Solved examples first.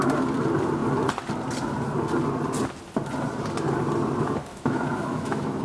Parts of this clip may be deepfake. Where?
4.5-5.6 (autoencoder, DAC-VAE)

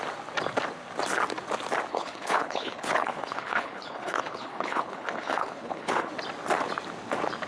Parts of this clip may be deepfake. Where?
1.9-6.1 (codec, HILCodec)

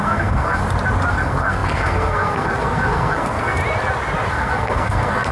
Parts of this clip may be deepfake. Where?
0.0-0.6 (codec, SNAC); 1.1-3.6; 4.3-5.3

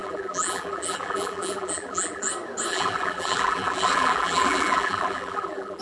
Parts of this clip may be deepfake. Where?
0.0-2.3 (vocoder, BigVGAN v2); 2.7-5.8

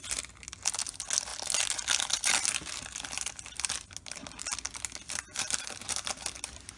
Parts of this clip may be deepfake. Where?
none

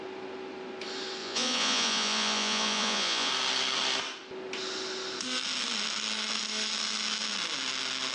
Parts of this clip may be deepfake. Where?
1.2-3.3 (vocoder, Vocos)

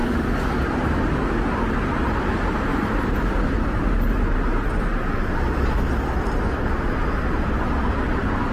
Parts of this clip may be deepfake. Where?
0.0-1.0 (vocoder, BigVGAN v2); 2.7-5.1